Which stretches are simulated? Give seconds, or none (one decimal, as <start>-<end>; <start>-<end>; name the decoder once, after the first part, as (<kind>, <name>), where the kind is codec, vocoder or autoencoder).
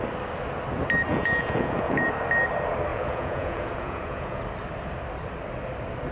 1.1-2.1 (vocoder, Vocos); 2.9-4.4